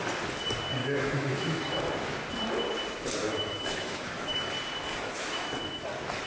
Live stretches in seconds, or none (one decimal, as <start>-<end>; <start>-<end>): 0.0-0.8; 1.9-3.2; 4.5-4.9; 5.8-6.3